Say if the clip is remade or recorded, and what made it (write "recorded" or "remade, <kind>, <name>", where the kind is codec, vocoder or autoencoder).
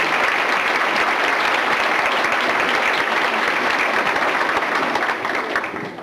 recorded